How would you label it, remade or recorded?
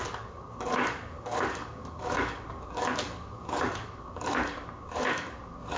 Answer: remade